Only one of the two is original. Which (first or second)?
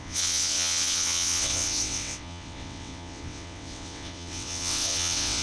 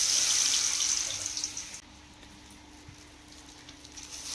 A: second